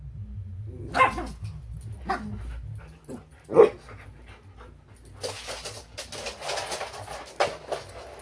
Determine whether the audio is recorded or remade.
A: recorded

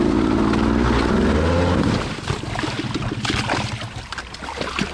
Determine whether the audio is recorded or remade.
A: recorded